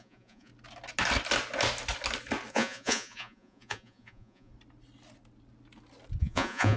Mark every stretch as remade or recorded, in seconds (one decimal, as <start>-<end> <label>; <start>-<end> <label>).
0.0-0.5 remade; 0.5-2.5 recorded; 2.5-4.5 remade; 4.5-6.2 recorded; 6.2-6.8 remade